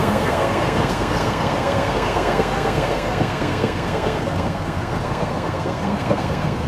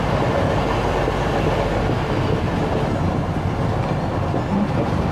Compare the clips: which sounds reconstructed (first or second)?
first